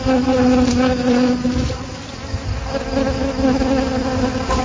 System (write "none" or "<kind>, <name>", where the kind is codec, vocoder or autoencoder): none